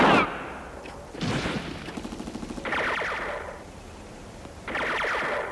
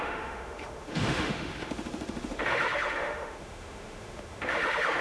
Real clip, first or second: first